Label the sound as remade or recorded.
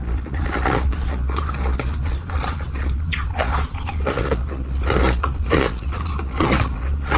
remade